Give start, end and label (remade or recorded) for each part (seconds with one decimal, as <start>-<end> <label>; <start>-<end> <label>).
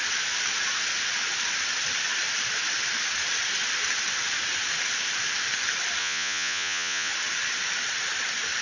0.0-6.0 recorded; 6.0-7.1 remade; 7.1-8.6 recorded